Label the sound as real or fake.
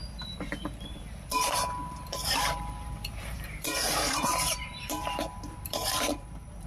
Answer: fake